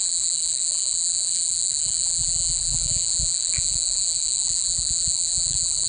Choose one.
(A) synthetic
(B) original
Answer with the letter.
A